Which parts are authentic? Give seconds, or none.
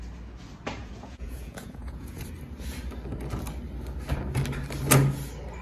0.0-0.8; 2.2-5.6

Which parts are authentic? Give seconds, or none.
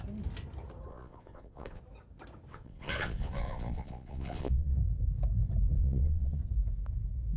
0.0-0.9; 1.8-2.5; 4.8-5.8; 6.4-7.4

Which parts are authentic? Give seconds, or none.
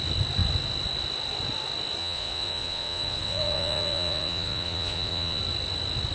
0.0-2.0; 5.4-6.1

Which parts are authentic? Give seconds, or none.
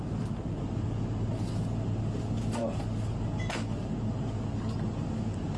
0.0-5.6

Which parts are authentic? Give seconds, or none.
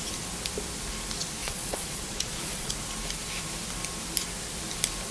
0.0-1.4; 2.7-5.1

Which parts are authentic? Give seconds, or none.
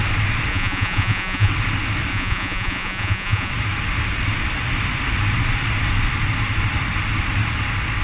0.0-0.5; 1.5-2.1; 3.5-8.0